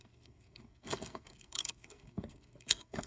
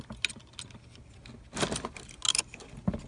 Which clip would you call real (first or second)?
second